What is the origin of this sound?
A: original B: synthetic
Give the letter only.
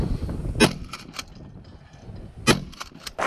A